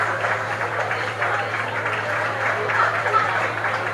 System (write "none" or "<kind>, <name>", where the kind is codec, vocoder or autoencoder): none